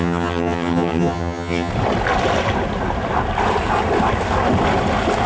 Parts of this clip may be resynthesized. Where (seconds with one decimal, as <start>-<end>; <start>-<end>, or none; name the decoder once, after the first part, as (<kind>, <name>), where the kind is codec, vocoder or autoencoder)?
0.0-1.7 (vocoder, HiFi-GAN)